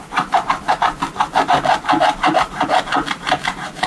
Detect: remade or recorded recorded